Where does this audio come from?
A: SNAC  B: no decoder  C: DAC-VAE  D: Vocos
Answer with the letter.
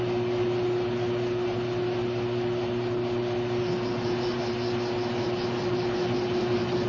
B